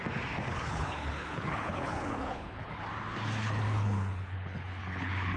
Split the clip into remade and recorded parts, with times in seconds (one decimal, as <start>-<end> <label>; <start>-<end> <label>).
0.0-0.5 recorded; 0.5-2.8 remade; 2.8-3.4 recorded; 3.4-5.4 remade